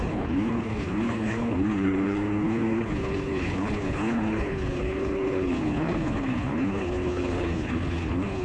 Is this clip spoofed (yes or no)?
yes